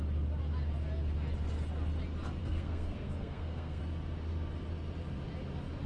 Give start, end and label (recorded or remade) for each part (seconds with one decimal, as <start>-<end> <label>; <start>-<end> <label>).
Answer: 0.0-2.4 recorded; 2.4-3.8 remade; 3.8-5.9 recorded